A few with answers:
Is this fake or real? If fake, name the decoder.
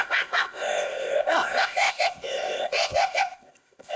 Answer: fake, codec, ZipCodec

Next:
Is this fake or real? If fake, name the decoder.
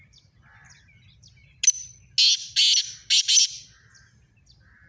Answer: real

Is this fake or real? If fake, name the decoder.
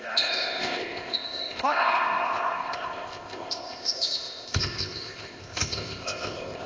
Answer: fake, codec, ZipCodec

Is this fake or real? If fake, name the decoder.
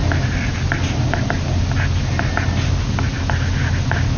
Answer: real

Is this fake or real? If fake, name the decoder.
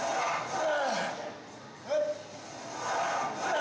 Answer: real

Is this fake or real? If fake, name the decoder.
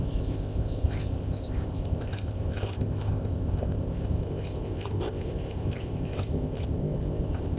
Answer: fake, codec, ZipCodec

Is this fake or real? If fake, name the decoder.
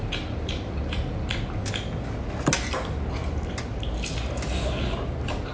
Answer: real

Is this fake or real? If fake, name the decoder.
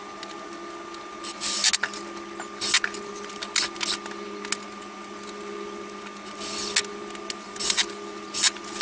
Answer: real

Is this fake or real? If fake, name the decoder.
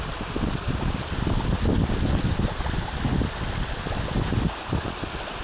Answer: real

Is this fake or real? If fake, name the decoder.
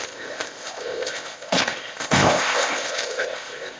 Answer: fake, codec, ZipCodec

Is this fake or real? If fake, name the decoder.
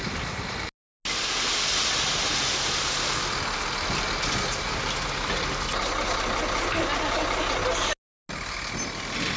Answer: real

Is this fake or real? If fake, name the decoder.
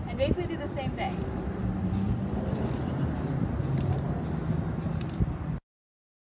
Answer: real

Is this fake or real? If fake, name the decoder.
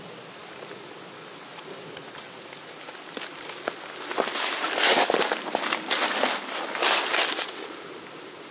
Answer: real